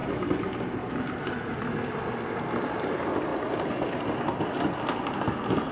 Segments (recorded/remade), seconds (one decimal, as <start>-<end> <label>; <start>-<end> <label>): 0.0-0.9 remade; 0.9-5.7 recorded